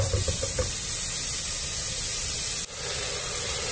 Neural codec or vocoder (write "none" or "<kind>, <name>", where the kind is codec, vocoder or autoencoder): none